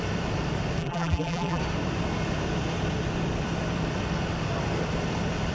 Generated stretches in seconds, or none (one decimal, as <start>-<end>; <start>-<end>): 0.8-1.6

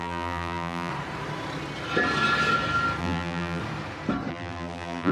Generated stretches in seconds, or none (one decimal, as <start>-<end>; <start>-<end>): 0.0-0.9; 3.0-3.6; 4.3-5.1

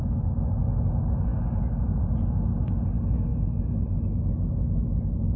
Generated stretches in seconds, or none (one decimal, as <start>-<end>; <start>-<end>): none